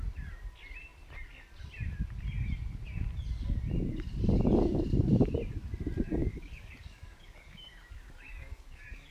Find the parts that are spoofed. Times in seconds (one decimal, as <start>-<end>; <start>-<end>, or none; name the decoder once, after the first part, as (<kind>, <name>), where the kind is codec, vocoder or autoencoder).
6.2-9.1 (codec, DAC)